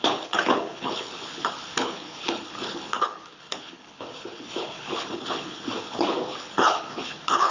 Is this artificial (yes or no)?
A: yes